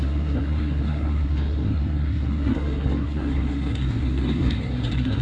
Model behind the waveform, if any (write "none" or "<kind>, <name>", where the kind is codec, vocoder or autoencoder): codec, SNAC